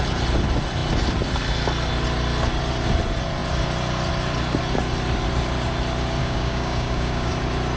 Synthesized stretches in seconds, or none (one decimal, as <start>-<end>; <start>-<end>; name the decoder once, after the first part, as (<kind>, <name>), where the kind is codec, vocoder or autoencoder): 6.2-7.3 (codec, DAC)